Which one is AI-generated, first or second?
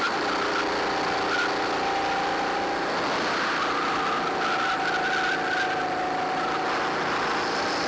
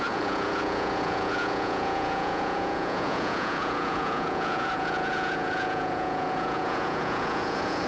second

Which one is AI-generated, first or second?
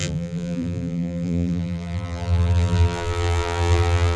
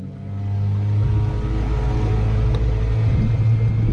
first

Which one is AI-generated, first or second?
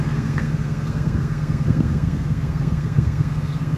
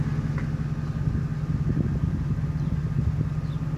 first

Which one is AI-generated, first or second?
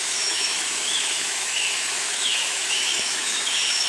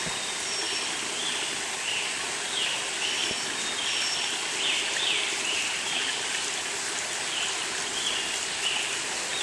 first